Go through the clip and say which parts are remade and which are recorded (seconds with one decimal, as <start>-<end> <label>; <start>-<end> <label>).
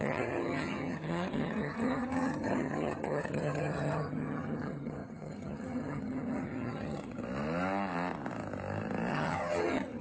0.0-7.2 remade; 7.2-9.1 recorded; 9.1-10.0 remade